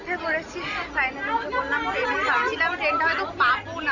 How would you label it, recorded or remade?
recorded